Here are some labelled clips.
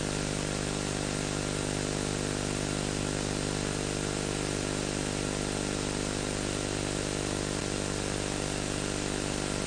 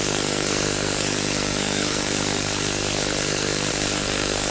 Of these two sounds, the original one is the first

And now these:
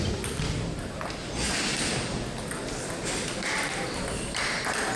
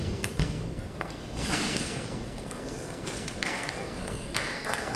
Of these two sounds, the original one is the first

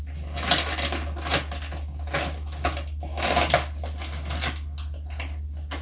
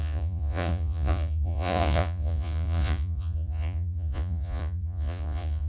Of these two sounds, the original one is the first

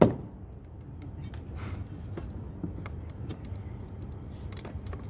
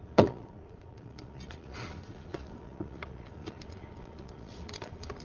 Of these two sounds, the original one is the first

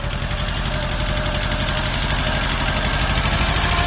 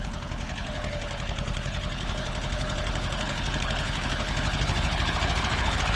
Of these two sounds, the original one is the first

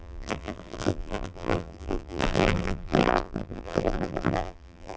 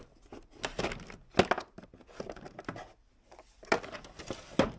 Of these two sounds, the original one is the second